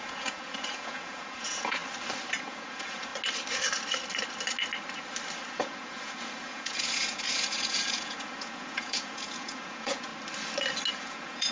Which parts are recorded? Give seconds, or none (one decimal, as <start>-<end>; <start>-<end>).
1.8-2.4; 3.1-5.5; 10.1-10.9